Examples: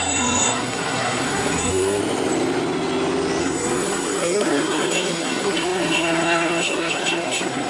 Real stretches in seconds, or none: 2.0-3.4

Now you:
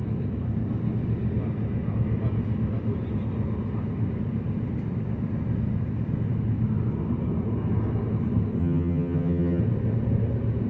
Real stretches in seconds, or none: 0.0-8.6; 9.6-10.7

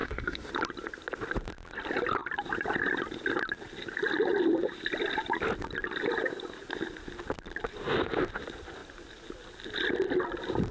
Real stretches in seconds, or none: 0.5-10.7

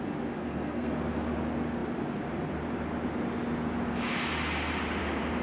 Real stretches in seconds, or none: 0.0-0.4; 0.9-5.4

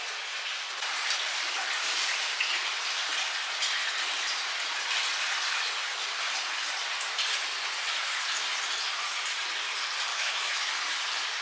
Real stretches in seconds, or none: 0.0-10.1; 10.7-11.4

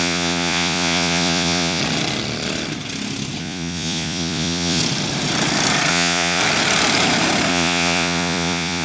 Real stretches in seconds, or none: 1.8-3.4; 4.8-5.9; 6.4-7.5

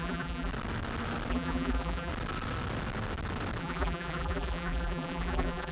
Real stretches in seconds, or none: 0.5-1.3; 2.1-3.6

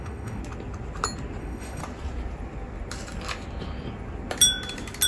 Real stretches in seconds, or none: 0.4-1.4; 1.8-5.1